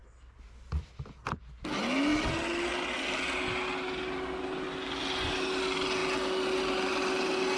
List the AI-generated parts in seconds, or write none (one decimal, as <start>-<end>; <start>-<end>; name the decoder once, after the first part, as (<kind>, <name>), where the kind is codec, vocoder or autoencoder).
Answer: none